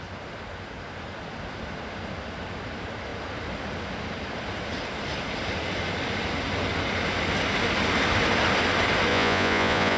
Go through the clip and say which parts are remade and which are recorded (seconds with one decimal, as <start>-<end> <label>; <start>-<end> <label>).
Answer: 0.0-9.1 recorded; 9.1-10.0 remade